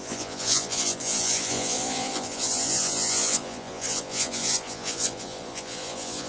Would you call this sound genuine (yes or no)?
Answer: no